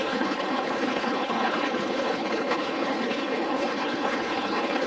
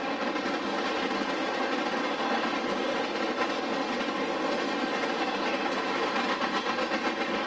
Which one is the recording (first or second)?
second